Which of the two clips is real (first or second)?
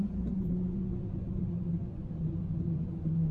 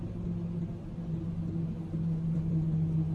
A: second